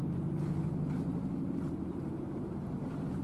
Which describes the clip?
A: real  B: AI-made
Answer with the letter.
B